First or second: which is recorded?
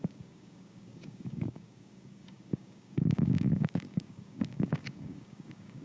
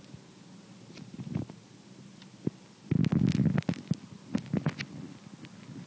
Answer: second